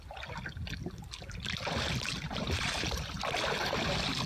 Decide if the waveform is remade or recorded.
recorded